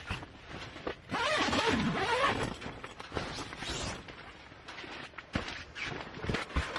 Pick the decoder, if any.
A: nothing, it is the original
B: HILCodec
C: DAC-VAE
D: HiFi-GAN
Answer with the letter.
A